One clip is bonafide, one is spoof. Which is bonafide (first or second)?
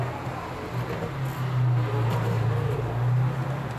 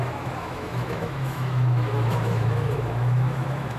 first